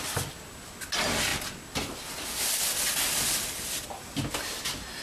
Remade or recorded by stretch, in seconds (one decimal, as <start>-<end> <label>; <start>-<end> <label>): 0.0-5.0 recorded